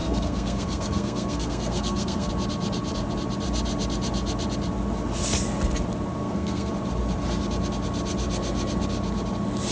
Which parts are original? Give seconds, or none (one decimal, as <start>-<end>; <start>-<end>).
2.3-6.2; 6.7-9.7